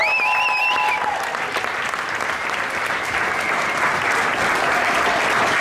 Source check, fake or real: real